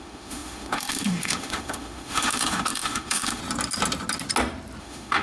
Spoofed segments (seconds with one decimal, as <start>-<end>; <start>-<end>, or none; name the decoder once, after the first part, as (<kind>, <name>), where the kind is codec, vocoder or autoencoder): 0.0-3.4 (autoencoder, DAC-VAE); 4.8-5.2